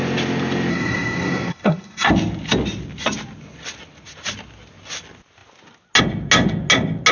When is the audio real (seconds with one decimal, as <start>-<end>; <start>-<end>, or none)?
0.0-0.7; 2.1-7.1